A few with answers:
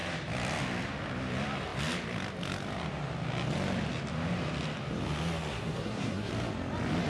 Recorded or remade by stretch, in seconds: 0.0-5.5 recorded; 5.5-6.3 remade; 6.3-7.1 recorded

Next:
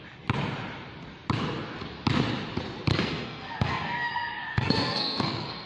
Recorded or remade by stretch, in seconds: 0.0-2.9 recorded; 2.9-5.7 remade